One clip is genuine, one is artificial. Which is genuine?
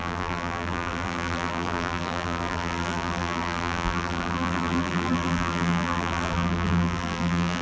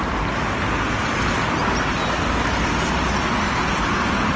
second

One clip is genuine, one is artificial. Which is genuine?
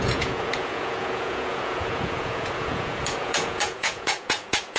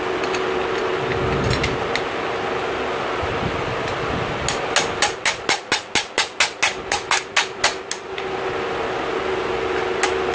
second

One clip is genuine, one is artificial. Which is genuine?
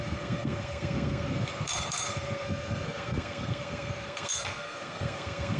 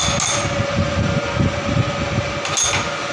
second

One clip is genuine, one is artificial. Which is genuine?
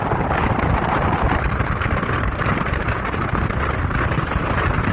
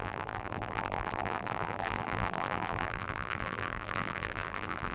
first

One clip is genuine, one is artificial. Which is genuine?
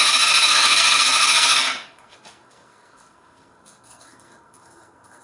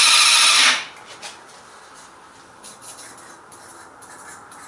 second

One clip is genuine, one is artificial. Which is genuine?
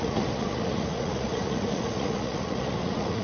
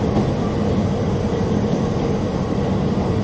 second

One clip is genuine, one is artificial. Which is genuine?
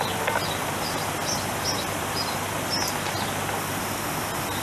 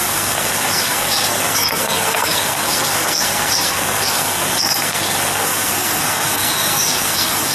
first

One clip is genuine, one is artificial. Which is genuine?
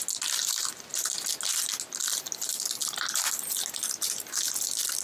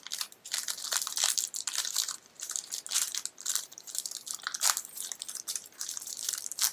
first